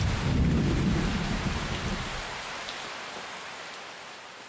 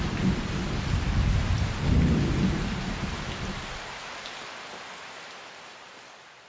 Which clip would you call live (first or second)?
second